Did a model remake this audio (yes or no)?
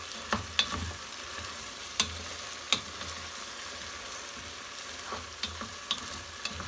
no